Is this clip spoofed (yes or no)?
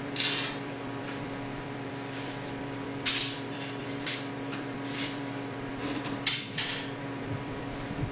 yes